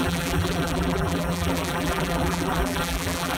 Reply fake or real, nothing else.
fake